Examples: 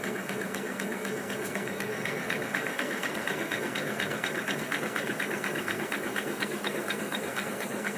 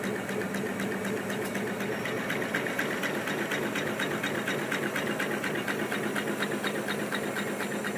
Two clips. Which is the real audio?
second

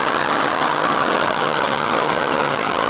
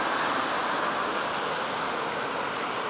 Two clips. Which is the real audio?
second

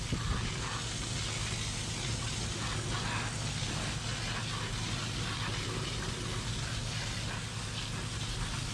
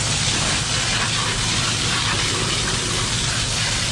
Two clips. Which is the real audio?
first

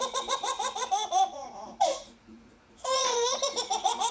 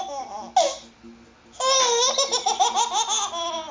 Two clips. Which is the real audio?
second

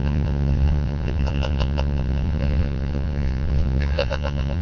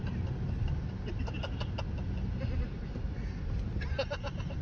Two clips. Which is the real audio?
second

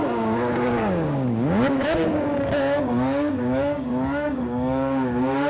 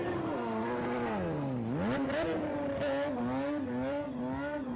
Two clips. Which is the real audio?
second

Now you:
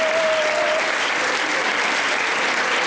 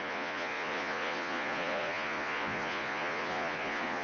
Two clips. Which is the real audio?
first